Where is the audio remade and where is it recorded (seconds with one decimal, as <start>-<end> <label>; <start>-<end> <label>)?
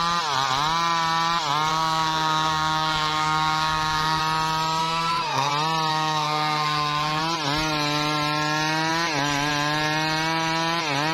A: 0.0-1.7 recorded; 1.7-4.2 remade; 4.2-4.8 recorded; 4.8-5.5 remade; 5.5-5.9 recorded; 5.9-7.2 remade; 7.2-11.1 recorded